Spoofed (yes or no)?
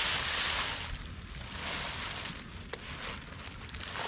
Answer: no